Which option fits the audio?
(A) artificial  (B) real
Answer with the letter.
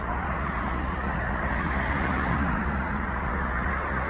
A